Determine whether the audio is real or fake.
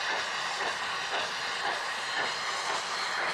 real